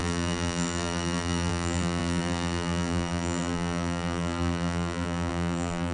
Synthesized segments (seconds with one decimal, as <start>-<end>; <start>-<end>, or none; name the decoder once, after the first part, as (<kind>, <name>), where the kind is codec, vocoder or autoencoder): 0.0-5.9 (vocoder, BigVGAN v2)